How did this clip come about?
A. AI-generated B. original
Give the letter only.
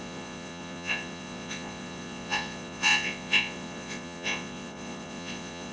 A